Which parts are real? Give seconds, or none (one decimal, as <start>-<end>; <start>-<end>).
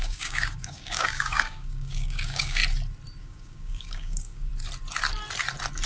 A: 2.6-3.2; 4.5-5.9